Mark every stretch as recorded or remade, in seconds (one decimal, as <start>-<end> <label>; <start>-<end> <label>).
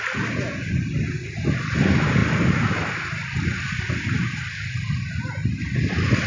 0.0-6.3 recorded